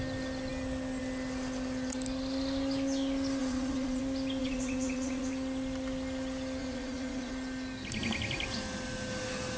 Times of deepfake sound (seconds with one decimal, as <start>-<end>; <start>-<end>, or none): 3.4-4.0; 4.4-5.3; 6.6-7.3